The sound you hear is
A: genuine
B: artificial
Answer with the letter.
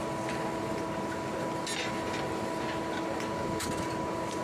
A